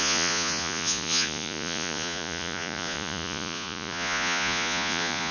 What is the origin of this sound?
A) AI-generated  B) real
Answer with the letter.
A